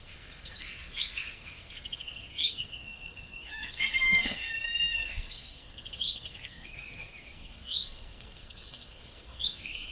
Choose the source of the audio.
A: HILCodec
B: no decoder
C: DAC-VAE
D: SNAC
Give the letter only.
D